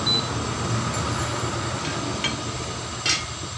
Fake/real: real